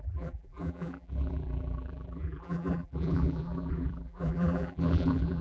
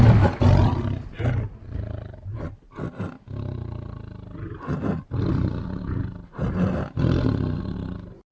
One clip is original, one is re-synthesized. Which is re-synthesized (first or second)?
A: first